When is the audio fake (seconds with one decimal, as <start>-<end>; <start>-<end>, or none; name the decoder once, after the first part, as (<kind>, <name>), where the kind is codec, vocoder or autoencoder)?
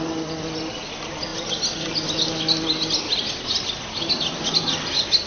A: none